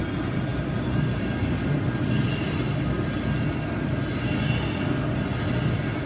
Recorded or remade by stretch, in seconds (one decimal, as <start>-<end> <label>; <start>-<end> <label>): 0.0-6.1 recorded